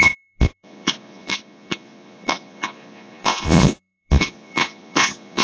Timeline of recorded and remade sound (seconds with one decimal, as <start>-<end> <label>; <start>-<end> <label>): 0.0-5.4 remade